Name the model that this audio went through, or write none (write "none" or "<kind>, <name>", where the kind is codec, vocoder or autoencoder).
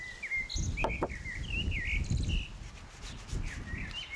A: none